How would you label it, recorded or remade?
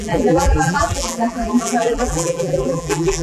remade